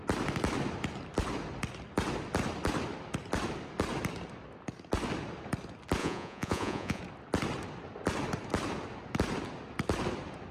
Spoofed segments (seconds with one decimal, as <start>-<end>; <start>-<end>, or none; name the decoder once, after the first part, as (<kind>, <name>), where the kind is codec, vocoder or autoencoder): 6.0-7.0 (vocoder, Vocos)